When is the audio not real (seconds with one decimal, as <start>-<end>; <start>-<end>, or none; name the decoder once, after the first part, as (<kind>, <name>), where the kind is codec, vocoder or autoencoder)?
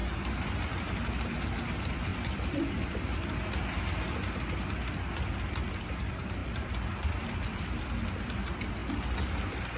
2.1-3.5 (vocoder, BigVGAN v2); 6.4-7.8